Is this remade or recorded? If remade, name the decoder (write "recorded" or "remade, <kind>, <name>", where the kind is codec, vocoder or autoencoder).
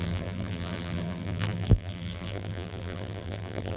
remade, vocoder, BigVGAN v2